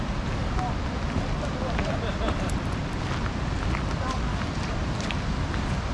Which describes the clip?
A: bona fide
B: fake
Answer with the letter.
A